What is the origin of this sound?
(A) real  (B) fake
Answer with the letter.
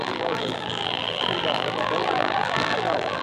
B